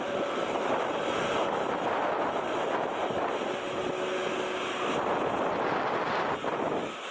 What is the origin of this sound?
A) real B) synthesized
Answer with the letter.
A